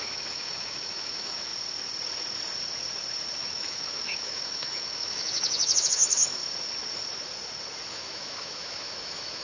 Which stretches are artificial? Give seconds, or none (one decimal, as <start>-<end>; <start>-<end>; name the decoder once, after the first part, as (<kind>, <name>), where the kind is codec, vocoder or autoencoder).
0.0-1.5 (autoencoder, DAC-VAE); 3.4-6.4; 7.9-9.4

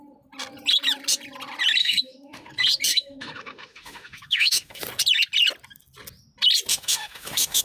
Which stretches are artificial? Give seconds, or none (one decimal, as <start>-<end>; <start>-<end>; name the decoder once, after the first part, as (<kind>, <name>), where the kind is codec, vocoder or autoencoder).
1.8-2.5 (autoencoder, DAC-VAE); 2.9-4.8; 6.7-7.6